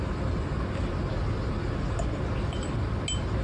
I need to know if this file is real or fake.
real